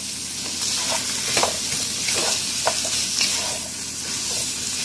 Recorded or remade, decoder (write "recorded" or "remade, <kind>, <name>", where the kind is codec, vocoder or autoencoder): recorded